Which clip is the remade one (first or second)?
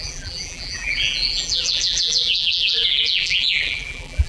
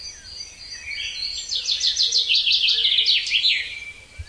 first